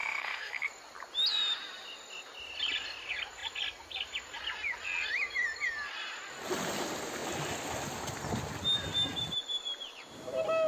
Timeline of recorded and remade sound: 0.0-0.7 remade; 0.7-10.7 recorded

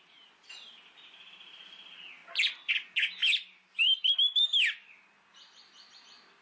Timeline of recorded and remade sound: 0.0-6.4 recorded

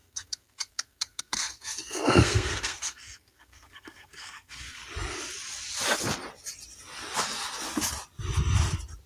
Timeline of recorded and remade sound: 0.0-4.8 remade; 4.8-9.1 recorded

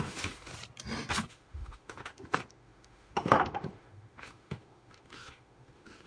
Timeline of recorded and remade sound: 0.0-0.5 remade; 0.5-1.3 recorded; 1.3-6.1 remade

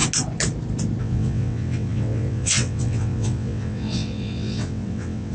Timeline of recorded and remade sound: 0.0-1.0 recorded; 1.0-5.3 remade